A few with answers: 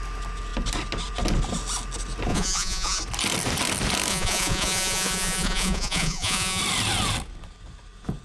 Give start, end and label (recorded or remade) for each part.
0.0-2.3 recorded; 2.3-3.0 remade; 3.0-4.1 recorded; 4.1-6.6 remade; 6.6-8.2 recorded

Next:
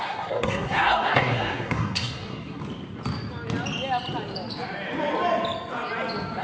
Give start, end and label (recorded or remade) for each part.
0.0-2.6 remade; 2.6-6.4 recorded

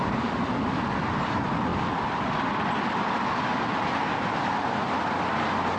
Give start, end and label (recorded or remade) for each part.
0.0-5.8 recorded

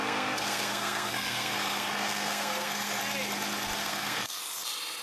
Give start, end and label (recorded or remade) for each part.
0.0-3.0 remade; 3.0-3.8 recorded; 3.8-4.4 remade; 4.4-5.0 recorded

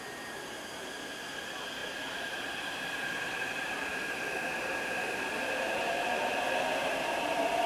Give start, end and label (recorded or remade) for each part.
0.0-1.8 recorded; 1.8-6.4 remade; 6.4-7.7 recorded

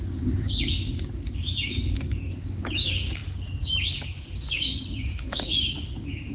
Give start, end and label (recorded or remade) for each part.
0.0-6.3 remade

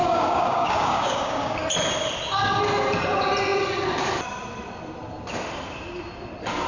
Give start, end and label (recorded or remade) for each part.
0.0-1.6 remade; 1.6-6.7 recorded

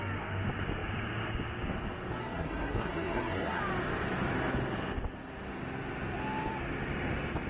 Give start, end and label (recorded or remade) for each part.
0.0-2.2 recorded; 2.2-3.6 remade; 3.6-7.5 recorded